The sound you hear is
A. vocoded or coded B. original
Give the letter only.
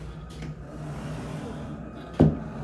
B